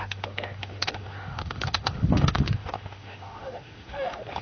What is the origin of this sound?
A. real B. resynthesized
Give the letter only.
B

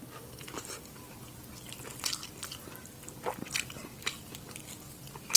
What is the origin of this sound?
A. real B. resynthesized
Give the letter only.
A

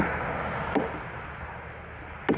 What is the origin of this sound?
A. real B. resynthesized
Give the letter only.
A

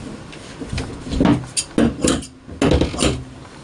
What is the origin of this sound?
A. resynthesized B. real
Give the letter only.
B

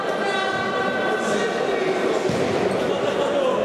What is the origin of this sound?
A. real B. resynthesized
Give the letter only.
A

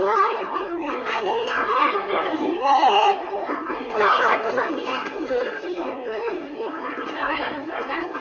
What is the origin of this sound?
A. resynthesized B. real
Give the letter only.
A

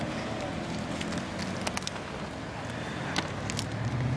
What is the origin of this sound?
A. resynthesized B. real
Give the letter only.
B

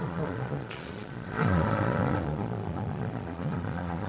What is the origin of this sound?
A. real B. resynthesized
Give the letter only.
B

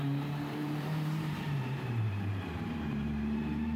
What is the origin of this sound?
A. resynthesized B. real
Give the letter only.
A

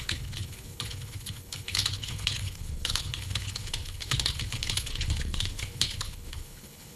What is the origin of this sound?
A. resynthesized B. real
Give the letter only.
A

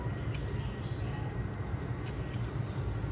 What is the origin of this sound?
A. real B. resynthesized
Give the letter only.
A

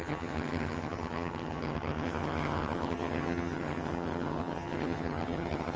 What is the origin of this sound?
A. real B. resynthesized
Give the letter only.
B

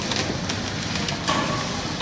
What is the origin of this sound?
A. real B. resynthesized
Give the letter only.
A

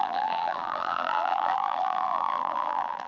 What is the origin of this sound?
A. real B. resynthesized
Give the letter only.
B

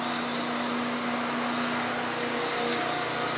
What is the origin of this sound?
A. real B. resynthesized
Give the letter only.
A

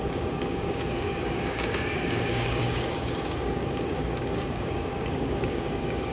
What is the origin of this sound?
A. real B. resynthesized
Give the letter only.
B